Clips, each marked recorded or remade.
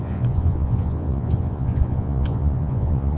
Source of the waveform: remade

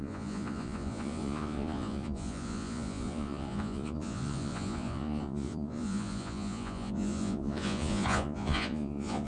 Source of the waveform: remade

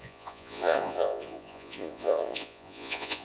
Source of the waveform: remade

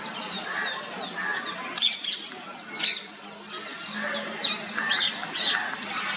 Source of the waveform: recorded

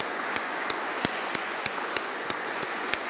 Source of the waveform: remade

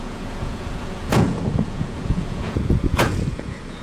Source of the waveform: remade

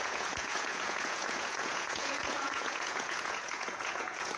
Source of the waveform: remade